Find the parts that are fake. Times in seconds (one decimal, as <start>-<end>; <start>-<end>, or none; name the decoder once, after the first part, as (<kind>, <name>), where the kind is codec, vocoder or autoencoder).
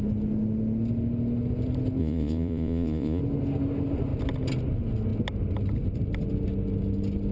2.0-3.2 (vocoder, Vocos)